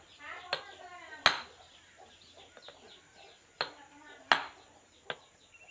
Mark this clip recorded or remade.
recorded